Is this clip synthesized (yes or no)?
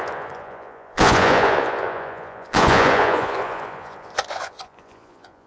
yes